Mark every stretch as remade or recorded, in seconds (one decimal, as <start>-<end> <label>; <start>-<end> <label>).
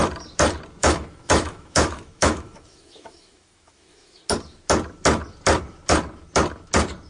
0.0-0.8 recorded; 0.8-4.2 remade; 4.2-7.1 recorded